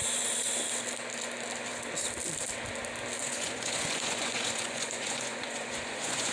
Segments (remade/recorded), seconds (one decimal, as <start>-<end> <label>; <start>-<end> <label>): 0.0-3.2 recorded; 3.2-6.3 remade